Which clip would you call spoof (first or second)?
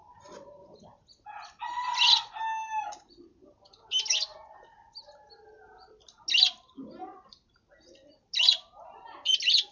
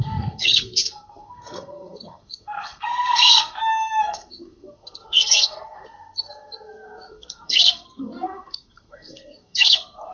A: second